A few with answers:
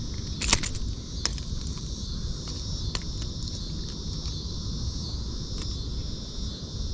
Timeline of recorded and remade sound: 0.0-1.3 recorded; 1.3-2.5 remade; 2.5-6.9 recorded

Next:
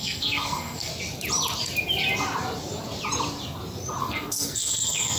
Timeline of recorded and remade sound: 0.0-0.9 remade; 0.9-4.0 recorded; 4.0-5.2 remade

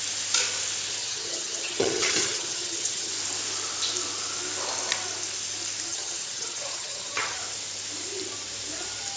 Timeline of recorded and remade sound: 0.0-1.0 recorded; 1.0-3.1 remade; 3.1-5.9 recorded; 5.9-7.4 remade; 7.4-9.2 recorded

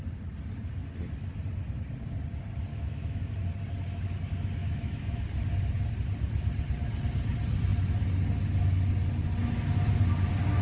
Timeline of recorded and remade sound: 0.0-2.7 recorded; 2.7-3.3 remade; 3.3-4.6 recorded; 4.6-5.2 remade; 5.2-10.6 recorded

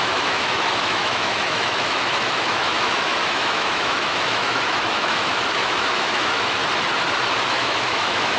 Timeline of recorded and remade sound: 0.0-6.6 remade; 6.6-7.5 recorded; 7.5-8.4 remade

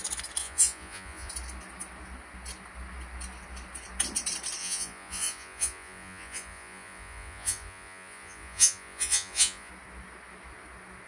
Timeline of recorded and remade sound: 0.0-0.4 recorded; 0.4-1.3 remade; 1.3-4.6 recorded; 4.6-9.7 remade; 9.7-11.1 recorded